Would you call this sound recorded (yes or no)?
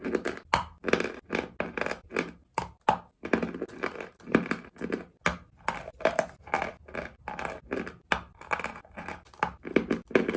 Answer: yes